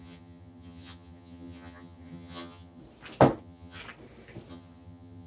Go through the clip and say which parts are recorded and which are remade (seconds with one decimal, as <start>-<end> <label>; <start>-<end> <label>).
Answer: 0.0-2.8 remade; 2.8-3.4 recorded; 3.4-3.8 remade; 3.8-4.5 recorded; 4.5-5.3 remade